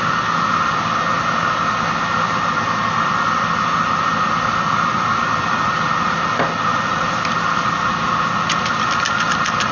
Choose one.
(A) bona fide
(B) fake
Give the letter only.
A